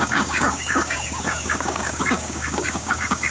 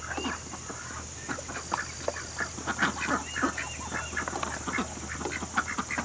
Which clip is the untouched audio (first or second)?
second